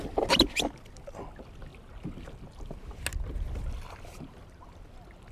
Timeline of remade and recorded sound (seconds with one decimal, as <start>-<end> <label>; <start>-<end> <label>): 0.0-5.3 recorded